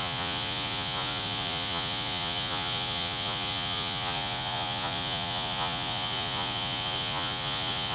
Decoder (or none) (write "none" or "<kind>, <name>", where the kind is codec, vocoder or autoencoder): vocoder, Vocos